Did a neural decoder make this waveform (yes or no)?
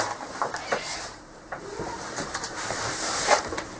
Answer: yes